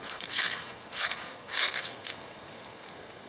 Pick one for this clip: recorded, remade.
remade